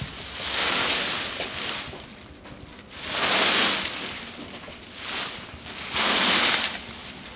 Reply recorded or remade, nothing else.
recorded